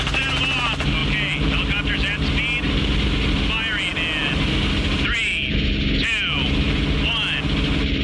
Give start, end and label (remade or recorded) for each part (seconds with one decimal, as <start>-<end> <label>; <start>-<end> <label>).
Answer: 0.0-8.0 recorded